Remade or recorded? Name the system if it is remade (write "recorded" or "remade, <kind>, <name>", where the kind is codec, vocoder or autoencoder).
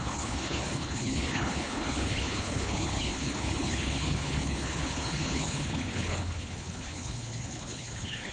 remade, codec, HILCodec